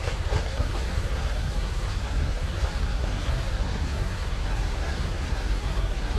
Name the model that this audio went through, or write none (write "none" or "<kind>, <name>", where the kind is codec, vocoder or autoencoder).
codec, SNAC